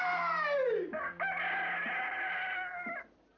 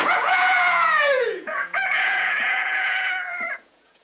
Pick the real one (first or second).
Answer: first